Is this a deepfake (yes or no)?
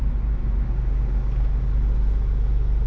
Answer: no